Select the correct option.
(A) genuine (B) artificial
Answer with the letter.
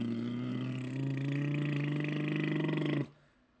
A